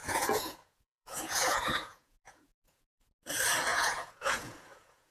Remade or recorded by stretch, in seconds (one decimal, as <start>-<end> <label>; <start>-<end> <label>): 0.0-3.1 remade; 3.1-3.7 recorded; 3.7-5.1 remade